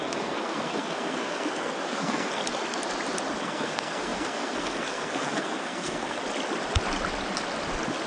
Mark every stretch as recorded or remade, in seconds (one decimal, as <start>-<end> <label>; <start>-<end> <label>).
0.0-2.4 remade; 2.4-3.4 recorded; 3.4-6.2 remade; 6.2-8.1 recorded